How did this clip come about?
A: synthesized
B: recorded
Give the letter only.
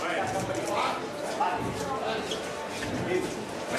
B